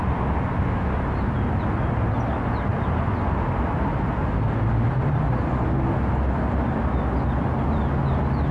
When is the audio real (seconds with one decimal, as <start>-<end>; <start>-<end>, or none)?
0.0-8.5